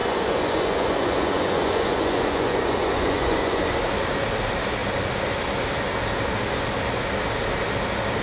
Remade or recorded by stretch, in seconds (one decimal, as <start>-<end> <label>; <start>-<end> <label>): 0.0-3.7 remade; 3.7-8.2 recorded